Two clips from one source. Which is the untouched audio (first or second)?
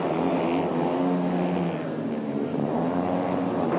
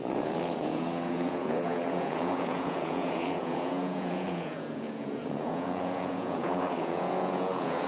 first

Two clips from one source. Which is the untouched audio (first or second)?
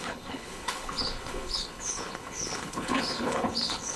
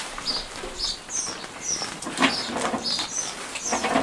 second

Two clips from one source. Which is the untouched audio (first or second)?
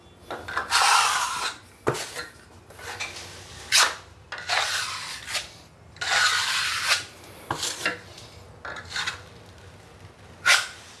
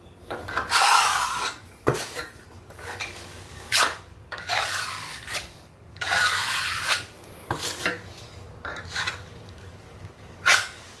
first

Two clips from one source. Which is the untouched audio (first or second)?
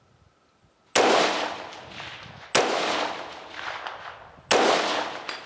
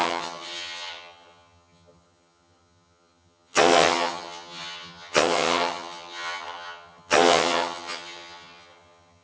first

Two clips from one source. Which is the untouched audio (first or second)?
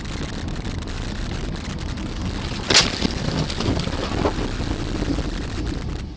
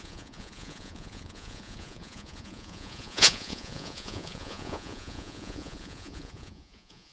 first